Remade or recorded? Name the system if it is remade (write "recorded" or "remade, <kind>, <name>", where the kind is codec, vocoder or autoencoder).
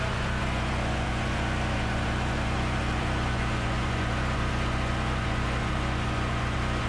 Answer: remade, vocoder, Vocos